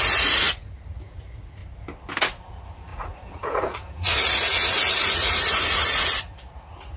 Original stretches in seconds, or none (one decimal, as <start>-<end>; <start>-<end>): 1.6-2.2